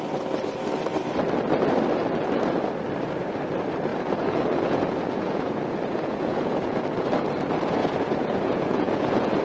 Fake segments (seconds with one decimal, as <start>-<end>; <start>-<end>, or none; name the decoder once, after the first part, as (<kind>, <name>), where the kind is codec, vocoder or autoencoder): 3.9-6.8 (vocoder, Vocos); 7.8-9.4

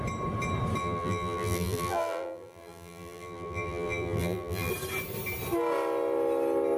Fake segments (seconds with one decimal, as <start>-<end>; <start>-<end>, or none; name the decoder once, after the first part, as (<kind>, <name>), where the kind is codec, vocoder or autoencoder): 0.8-4.7 (vocoder, BigVGAN v2)

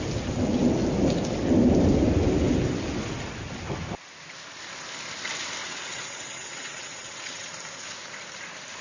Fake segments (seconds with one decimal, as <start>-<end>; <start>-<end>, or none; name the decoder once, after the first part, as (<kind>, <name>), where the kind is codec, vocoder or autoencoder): 5.6-7.5 (vocoder, WaveNeXt)

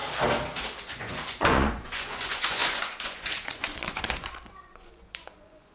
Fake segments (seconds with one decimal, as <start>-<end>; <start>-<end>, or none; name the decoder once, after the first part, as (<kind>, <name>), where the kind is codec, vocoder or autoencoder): 0.9-5.7 (vocoder, Vocos)

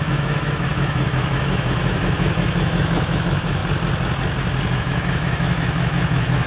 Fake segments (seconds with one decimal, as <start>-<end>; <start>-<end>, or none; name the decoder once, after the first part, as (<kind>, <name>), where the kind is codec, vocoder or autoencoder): 0.0-3.6 (autoencoder, DAC-VAE); 4.7-6.5

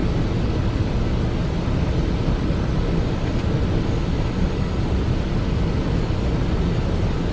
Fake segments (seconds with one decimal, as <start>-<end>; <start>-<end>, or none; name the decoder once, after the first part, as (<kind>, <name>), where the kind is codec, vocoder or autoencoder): none